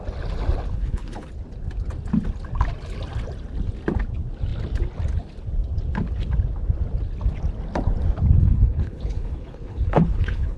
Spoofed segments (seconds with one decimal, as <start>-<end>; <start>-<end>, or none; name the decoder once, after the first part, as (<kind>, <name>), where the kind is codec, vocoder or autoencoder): 0.7-1.3 (codec, HILCodec); 8.4-10.6